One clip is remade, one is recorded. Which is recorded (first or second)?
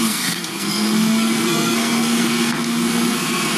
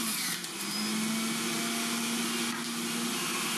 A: second